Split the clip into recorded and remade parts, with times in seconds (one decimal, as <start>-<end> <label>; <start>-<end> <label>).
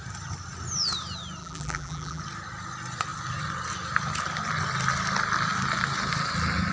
0.0-1.4 recorded; 1.4-2.2 remade; 2.2-6.7 recorded